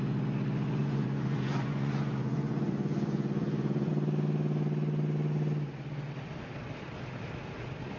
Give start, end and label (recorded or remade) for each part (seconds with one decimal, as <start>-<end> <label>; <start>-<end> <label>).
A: 0.0-0.8 recorded; 0.8-3.9 remade; 3.9-8.0 recorded